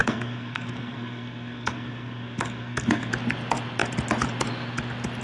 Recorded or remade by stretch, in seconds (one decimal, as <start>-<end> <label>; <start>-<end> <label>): 0.0-3.1 remade; 3.1-5.2 recorded